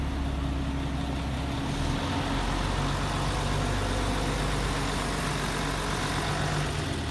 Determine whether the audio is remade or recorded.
recorded